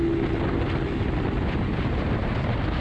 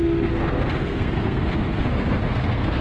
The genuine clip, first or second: first